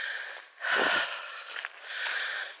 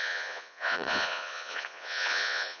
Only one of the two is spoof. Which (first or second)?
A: second